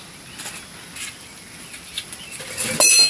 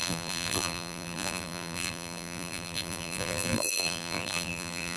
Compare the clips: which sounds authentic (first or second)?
first